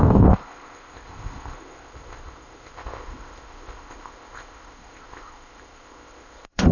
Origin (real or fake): fake